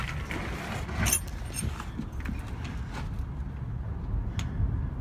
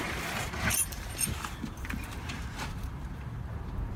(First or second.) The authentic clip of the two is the first